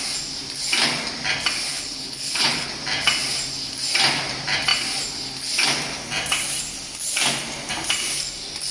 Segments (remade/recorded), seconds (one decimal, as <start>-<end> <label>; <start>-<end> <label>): 0.0-1.7 recorded; 1.7-2.7 remade; 2.7-8.7 recorded